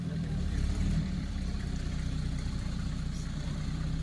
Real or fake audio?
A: fake